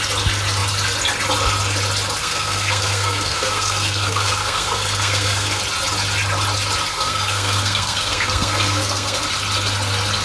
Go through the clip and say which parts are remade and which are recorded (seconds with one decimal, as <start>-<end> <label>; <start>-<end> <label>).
0.0-2.2 recorded; 2.2-5.6 remade; 5.6-6.9 recorded; 6.9-9.2 remade; 9.2-10.2 recorded